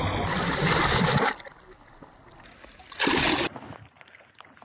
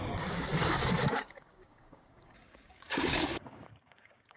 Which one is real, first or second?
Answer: first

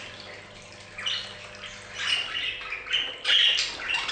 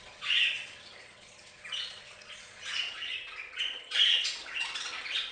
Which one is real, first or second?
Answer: first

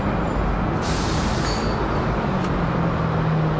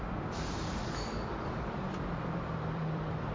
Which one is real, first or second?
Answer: first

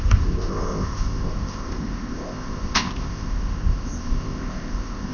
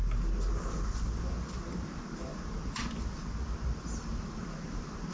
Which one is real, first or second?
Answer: second